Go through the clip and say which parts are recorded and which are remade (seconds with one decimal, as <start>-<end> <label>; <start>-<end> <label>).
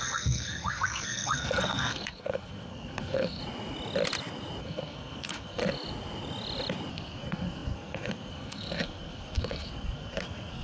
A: 0.0-3.4 remade; 3.4-4.6 recorded; 4.6-5.6 remade; 5.6-6.9 recorded; 6.9-10.6 remade